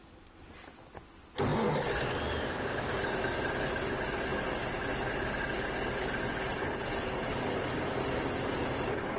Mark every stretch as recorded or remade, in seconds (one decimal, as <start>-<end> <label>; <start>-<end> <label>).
0.0-9.2 recorded